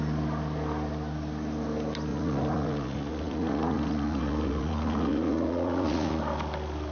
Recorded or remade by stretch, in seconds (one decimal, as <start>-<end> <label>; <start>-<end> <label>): 0.0-2.1 recorded; 2.1-6.2 remade; 6.2-6.9 recorded